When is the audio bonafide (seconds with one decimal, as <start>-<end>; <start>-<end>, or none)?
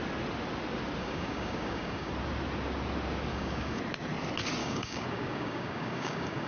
0.0-1.0; 2.1-3.3; 3.8-4.6